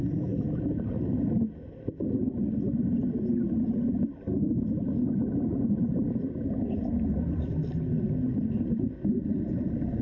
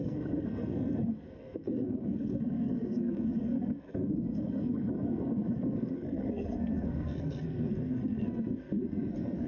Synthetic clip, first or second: second